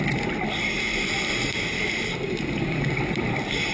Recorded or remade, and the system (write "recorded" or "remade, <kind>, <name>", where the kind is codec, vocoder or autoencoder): recorded